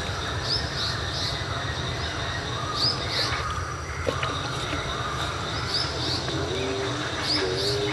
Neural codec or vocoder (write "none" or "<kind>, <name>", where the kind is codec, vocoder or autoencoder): none